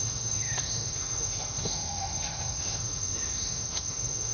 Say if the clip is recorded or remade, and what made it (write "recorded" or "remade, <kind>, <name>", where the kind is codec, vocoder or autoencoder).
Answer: remade, autoencoder, DAC-VAE